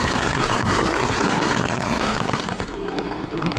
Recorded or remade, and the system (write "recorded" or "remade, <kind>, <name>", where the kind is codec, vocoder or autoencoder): remade, codec, SNAC